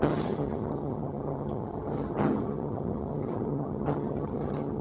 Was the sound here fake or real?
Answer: fake